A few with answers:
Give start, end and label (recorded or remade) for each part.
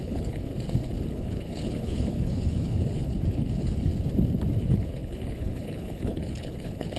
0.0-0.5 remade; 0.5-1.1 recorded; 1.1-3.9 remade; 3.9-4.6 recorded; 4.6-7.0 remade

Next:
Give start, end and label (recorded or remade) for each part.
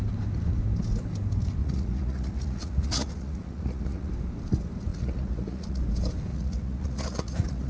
0.0-1.6 recorded; 1.6-4.1 remade; 4.1-4.9 recorded; 4.9-5.8 remade; 5.8-6.3 recorded; 6.3-7.7 remade